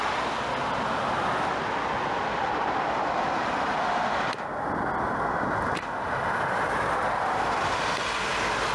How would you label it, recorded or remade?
recorded